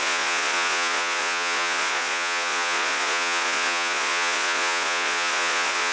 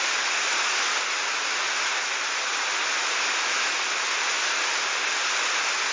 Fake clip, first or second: first